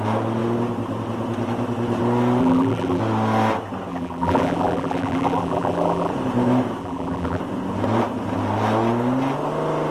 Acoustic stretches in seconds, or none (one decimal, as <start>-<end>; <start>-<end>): 0.0-2.4; 3.0-3.9; 6.1-6.8; 7.4-9.9